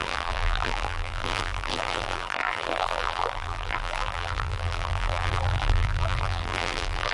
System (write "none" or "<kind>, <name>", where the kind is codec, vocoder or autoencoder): vocoder, BigVGAN v2